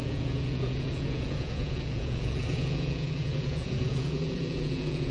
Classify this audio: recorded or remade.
remade